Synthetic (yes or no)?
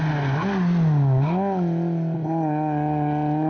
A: no